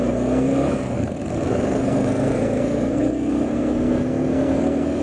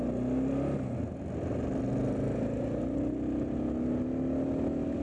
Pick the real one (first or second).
second